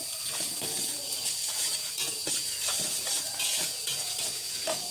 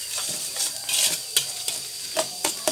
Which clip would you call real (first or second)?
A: second